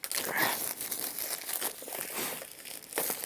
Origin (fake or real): real